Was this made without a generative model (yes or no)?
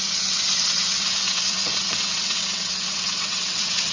no